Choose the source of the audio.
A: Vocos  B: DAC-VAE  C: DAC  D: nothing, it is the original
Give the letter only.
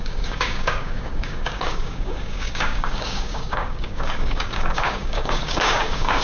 C